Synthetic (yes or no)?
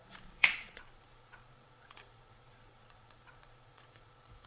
yes